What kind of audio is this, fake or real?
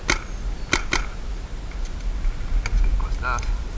real